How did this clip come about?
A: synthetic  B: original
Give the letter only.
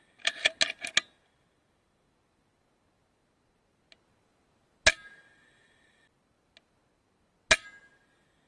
B